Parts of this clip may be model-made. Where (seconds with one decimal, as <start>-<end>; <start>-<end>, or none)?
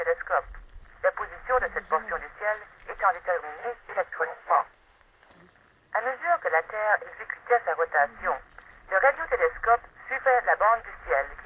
3.6-5.3